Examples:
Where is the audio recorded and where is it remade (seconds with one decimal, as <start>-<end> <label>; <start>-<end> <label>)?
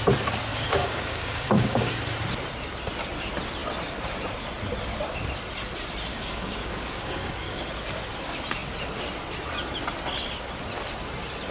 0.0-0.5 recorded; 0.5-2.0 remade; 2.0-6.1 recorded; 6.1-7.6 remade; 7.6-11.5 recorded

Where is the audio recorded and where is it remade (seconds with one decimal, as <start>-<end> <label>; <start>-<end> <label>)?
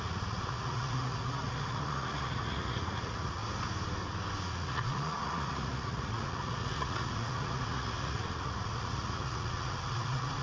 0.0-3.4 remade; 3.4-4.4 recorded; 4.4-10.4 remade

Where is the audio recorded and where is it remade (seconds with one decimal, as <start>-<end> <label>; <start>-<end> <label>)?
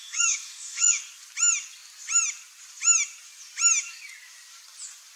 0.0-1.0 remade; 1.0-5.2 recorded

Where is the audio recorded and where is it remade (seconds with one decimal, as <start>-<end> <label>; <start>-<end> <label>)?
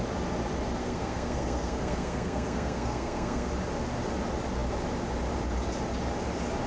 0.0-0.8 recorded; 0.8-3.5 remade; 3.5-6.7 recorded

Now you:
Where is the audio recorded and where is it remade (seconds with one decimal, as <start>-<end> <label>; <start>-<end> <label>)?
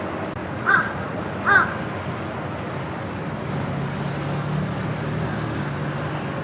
0.0-0.4 recorded; 0.4-1.3 remade; 1.3-6.4 recorded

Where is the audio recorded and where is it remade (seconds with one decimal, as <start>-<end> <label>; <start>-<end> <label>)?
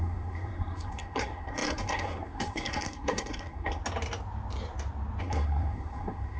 0.0-3.8 remade; 3.8-5.2 recorded; 5.2-6.4 remade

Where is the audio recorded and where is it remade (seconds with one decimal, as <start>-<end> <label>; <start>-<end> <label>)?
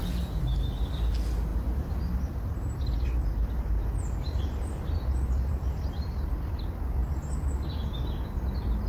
0.0-8.9 recorded